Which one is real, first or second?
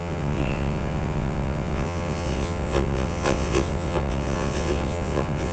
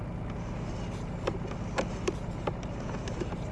second